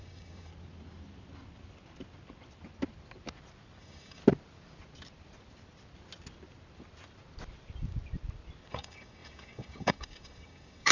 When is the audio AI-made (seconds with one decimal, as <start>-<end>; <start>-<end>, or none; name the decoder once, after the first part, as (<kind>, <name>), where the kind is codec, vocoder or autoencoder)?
0.0-0.5 (codec, DAC); 3.8-4.2; 8.7-10.9